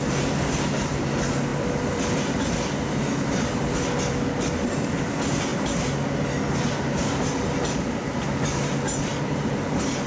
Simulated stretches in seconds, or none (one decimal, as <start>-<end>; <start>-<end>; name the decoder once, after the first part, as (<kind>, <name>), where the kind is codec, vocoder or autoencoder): 1.5-2.0 (vocoder, BigVGAN v2); 9.1-10.1